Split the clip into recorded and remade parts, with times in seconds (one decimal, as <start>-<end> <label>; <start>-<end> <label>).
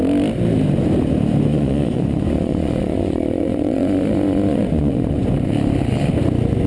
0.0-1.5 recorded; 1.5-5.5 remade; 5.5-6.7 recorded